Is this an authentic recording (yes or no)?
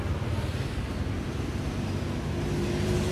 yes